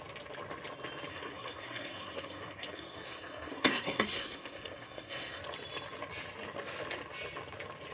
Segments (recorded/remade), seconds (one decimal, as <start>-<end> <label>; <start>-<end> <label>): 0.0-1.1 recorded; 1.1-5.4 remade; 5.4-7.9 recorded